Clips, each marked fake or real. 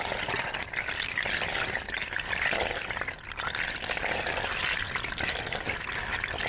real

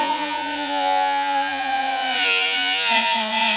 fake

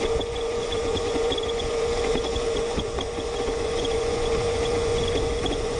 fake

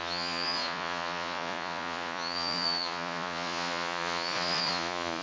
fake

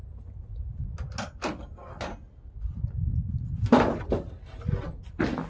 real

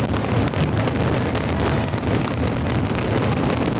real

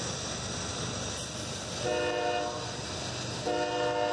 real